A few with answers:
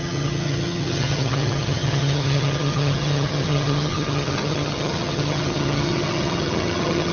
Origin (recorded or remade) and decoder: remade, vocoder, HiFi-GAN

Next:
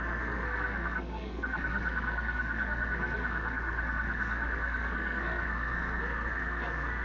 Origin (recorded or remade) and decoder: remade, codec, SNAC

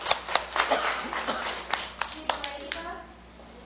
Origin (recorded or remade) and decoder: recorded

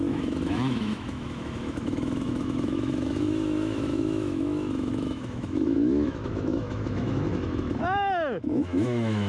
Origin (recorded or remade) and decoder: remade, autoencoder, DAC-VAE